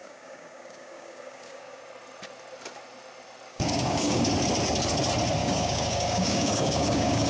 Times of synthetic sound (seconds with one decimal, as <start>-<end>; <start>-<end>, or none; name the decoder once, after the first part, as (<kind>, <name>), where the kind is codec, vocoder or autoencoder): 0.0-1.8 (codec, DAC); 3.5-4.3; 5.4-7.3